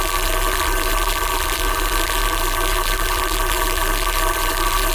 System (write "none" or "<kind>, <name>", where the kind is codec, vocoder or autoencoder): vocoder, BigVGAN v2